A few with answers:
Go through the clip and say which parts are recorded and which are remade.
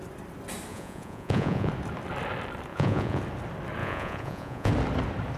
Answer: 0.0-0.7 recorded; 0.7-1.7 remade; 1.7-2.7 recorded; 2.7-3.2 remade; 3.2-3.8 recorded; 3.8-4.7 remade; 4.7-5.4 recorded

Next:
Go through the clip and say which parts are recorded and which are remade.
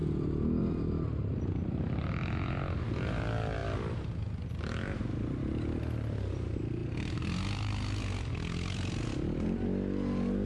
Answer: 0.0-10.5 recorded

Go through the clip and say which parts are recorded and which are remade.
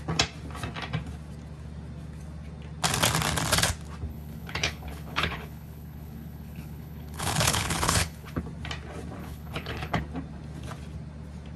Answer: 0.0-4.1 recorded; 4.1-8.4 remade; 8.4-9.2 recorded; 9.2-10.0 remade; 10.0-11.6 recorded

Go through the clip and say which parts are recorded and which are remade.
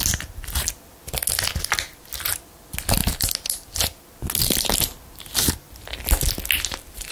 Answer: 0.0-7.1 recorded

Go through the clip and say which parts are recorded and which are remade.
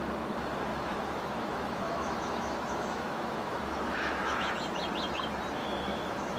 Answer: 0.0-0.7 recorded; 0.7-4.5 remade; 4.5-5.6 recorded; 5.6-6.4 remade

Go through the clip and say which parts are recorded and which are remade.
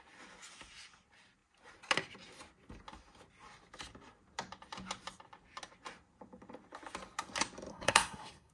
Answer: 0.0-7.7 recorded; 7.7-8.5 remade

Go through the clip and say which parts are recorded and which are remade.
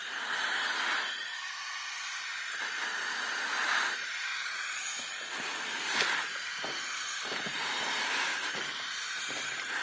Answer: 0.0-4.3 recorded; 4.3-7.6 remade; 7.6-9.8 recorded